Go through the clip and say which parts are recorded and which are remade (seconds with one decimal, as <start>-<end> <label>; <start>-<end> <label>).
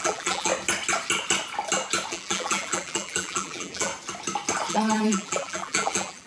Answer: 0.0-0.5 remade; 0.5-2.1 recorded; 2.1-3.9 remade; 3.9-4.7 recorded; 4.7-6.3 remade